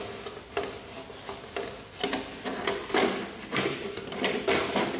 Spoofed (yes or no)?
no